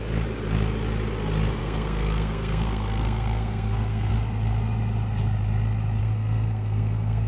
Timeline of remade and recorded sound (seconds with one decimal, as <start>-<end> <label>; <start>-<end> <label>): 0.0-1.6 recorded; 1.6-4.1 remade; 4.1-6.0 recorded; 6.0-7.3 remade